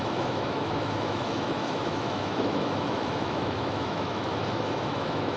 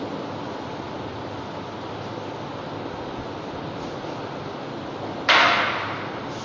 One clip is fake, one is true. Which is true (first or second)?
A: second